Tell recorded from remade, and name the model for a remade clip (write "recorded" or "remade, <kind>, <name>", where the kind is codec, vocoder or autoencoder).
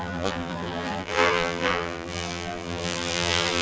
remade, vocoder, BigVGAN v2